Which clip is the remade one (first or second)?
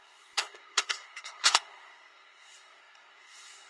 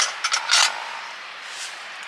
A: first